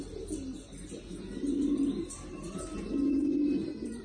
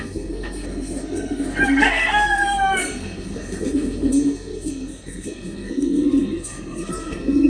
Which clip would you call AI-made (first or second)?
second